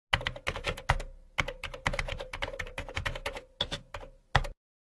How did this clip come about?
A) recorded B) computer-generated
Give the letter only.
A